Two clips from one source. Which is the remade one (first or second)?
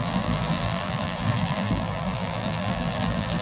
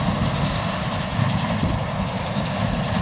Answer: first